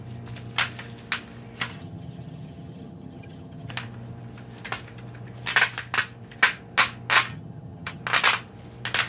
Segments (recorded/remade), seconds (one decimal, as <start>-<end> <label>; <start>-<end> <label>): 0.0-1.7 recorded; 1.7-3.7 remade; 3.7-7.3 recorded; 7.3-8.0 remade; 8.0-9.1 recorded